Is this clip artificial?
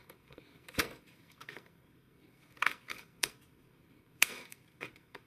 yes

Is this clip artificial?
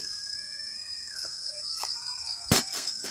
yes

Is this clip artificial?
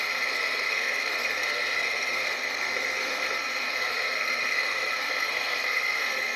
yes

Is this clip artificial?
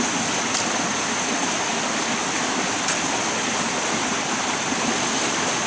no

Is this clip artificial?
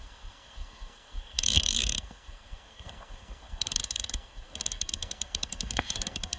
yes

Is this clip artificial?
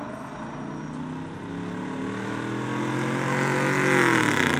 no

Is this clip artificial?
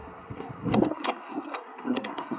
yes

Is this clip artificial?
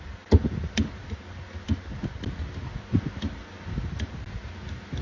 no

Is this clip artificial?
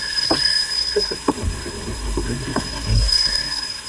yes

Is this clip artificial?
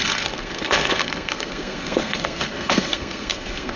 yes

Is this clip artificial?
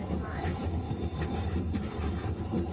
no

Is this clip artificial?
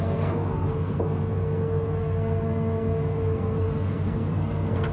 yes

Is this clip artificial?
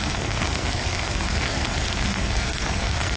yes